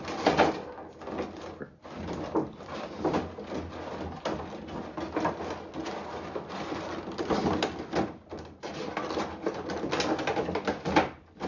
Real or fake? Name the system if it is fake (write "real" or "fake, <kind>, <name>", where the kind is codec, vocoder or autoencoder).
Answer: real